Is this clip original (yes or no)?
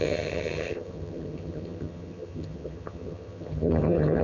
no